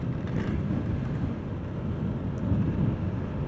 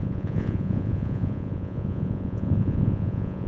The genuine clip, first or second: first